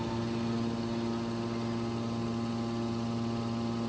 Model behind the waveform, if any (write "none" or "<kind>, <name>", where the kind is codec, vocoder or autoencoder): none